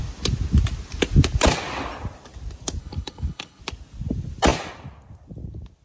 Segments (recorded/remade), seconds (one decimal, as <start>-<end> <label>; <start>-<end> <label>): 0.0-2.8 recorded; 2.8-3.6 remade; 3.6-5.8 recorded